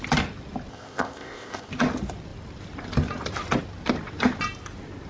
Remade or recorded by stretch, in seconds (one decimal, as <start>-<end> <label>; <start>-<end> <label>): 0.0-0.7 recorded; 0.7-1.7 remade; 1.7-5.1 recorded